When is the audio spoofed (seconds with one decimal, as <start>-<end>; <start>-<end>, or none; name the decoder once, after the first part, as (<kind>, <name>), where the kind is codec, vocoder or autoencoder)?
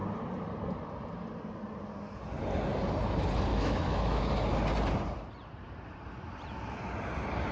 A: 3.5-4.2 (autoencoder, DAC-VAE)